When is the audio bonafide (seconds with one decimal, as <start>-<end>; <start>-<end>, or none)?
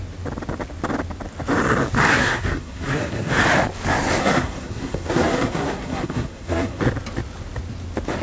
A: 0.0-2.1; 3.3-4.2; 6.8-8.2